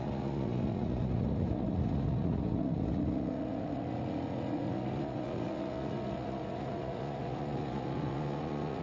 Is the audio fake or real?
fake